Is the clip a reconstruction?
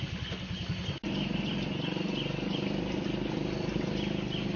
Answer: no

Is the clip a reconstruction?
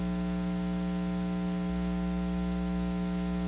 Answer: no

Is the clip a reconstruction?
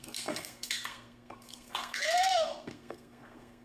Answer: yes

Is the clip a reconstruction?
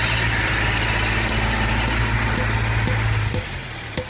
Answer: yes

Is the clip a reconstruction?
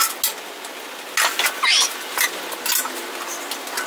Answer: no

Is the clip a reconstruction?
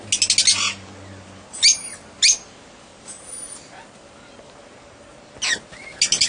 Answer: no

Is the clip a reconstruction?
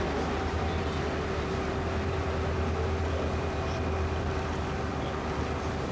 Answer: no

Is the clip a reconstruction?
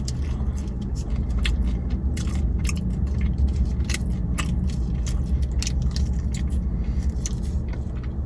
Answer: no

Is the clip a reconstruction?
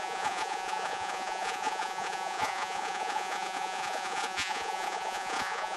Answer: yes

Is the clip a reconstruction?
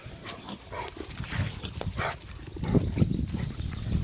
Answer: no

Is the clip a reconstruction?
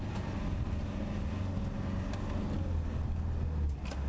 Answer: no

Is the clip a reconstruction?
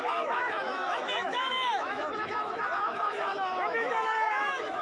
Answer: yes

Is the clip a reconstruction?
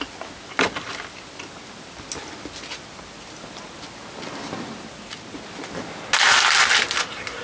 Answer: no